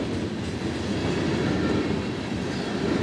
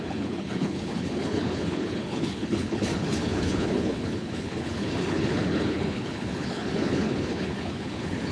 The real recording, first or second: first